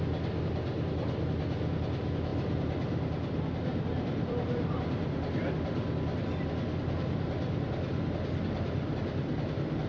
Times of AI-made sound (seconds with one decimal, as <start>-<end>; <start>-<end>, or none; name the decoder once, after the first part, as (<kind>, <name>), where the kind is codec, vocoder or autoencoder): 2.3-6.5 (vocoder, BigVGAN v2)

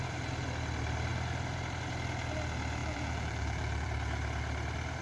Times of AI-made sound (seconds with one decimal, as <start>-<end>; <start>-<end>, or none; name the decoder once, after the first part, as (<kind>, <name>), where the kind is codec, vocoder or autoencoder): 2.8-3.9 (vocoder, BigVGAN v2)

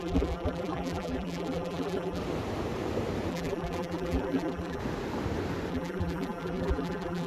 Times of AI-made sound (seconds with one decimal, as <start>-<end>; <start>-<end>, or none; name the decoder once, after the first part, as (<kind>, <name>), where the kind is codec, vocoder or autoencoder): 0.0-2.2 (vocoder, BigVGAN v2); 3.3-4.8; 5.7-7.3

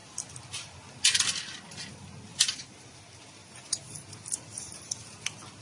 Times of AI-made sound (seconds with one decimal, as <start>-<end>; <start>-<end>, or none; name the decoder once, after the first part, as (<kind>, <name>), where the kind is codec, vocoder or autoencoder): 2.3-3.0 (vocoder, BigVGAN v2); 3.4-4.8

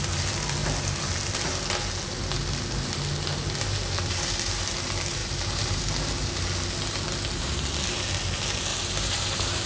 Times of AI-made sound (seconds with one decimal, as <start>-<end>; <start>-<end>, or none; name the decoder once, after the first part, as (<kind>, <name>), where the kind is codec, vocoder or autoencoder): 5.2-5.8 (vocoder, BigVGAN v2); 8.7-9.7

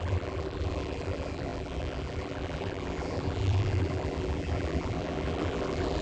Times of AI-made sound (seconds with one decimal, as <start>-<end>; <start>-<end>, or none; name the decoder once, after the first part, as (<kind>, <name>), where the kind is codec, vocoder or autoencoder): 0.0-6.0 (vocoder, BigVGAN v2)